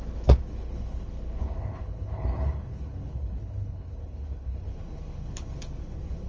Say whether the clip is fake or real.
fake